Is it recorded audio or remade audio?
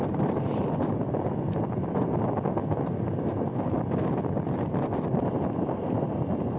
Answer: recorded